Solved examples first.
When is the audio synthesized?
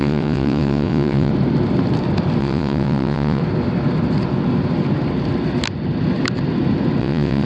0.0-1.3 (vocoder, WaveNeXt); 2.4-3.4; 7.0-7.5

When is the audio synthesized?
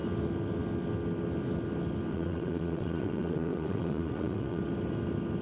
2.1-4.6 (vocoder, WaveNeXt)